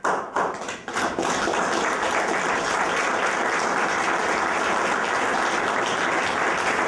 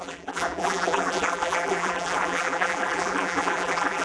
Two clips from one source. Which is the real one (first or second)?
first